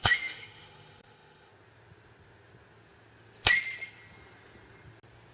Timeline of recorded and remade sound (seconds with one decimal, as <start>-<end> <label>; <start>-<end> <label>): 0.0-1.5 remade; 1.5-5.3 recorded